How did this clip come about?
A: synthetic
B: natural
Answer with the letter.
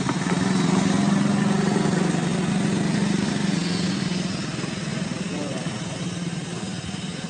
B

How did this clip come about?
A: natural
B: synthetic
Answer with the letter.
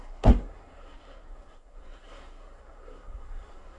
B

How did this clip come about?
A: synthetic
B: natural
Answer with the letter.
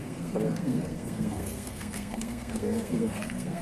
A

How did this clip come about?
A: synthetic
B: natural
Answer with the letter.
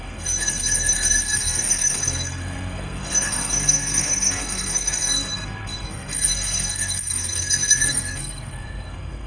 A